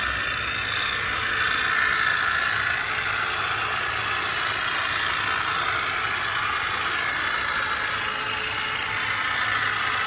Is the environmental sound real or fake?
real